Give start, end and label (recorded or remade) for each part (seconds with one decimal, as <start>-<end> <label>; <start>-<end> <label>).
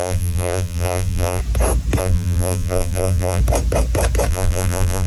0.0-1.4 remade; 1.4-2.0 recorded; 2.0-3.4 remade; 3.4-4.3 recorded; 4.3-5.1 remade